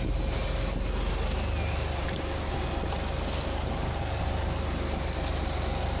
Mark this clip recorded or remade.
recorded